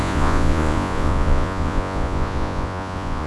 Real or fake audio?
fake